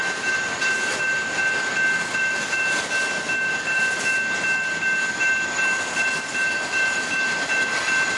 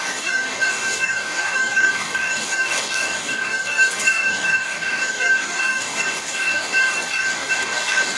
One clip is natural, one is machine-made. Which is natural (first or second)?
first